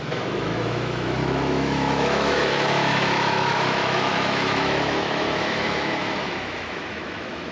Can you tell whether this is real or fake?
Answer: fake